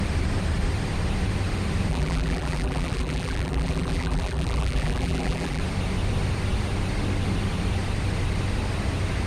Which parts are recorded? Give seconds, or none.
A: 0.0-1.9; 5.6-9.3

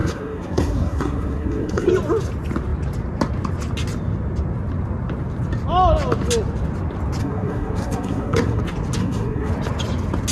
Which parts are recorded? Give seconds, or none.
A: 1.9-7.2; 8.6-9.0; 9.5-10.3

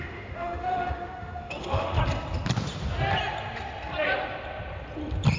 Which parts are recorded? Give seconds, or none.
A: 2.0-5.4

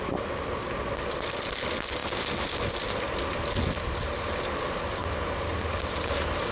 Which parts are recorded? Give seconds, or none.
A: 0.0-5.0

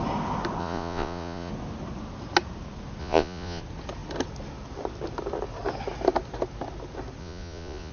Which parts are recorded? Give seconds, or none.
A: 0.0-0.6; 1.5-3.0; 3.6-7.2

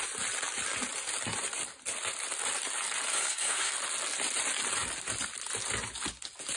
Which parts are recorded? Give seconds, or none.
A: 0.0-3.1; 3.7-6.6

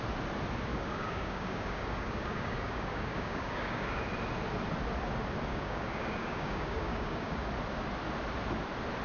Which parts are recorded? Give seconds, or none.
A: 0.0-0.7; 4.0-5.5; 7.5-9.0